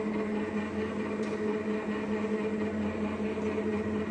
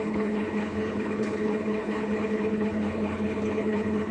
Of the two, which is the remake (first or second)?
second